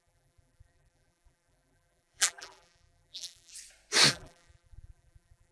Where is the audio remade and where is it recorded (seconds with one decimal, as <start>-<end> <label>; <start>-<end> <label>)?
0.0-3.5 remade; 3.5-4.1 recorded; 4.1-5.5 remade